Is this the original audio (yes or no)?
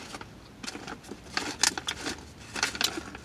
yes